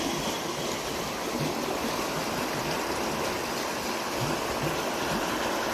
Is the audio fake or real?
real